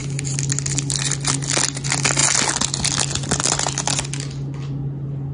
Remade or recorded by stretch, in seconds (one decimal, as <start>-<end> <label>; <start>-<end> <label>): 0.0-5.3 recorded